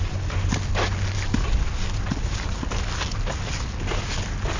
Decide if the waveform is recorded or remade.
recorded